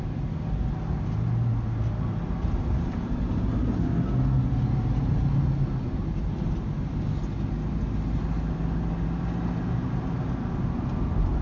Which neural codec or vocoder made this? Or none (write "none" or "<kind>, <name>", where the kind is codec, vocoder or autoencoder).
none